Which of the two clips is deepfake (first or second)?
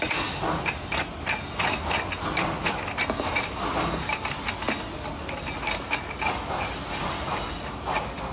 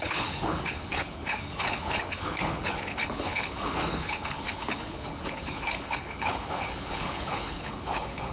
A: second